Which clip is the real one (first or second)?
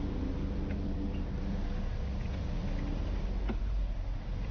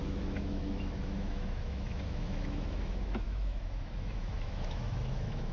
first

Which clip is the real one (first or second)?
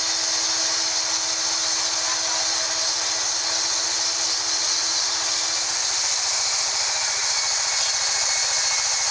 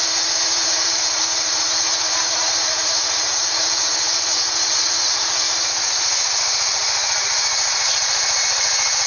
first